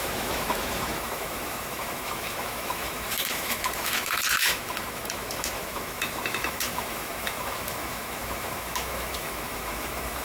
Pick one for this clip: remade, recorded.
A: remade